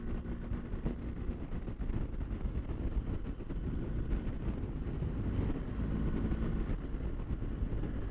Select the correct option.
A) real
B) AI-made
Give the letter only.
A